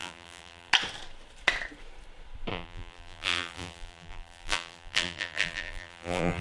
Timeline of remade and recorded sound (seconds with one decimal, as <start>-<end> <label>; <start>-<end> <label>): 0.0-0.7 remade; 0.7-2.5 recorded; 2.5-6.4 remade